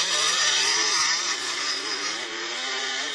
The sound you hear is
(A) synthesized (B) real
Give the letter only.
A